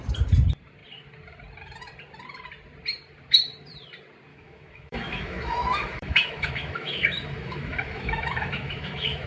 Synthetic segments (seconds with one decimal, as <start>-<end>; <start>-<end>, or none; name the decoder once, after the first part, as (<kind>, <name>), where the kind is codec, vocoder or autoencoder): 4.3-9.3 (autoencoder, DAC-VAE)